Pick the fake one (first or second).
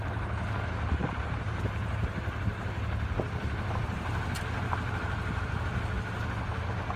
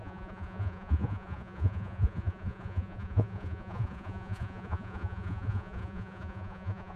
second